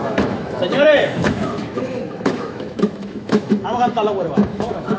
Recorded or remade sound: remade